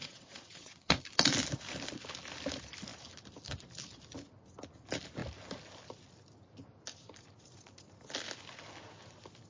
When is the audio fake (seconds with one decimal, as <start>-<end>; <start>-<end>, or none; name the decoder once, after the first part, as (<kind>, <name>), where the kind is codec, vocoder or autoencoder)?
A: 0.0-1.0 (vocoder, WaveNeXt)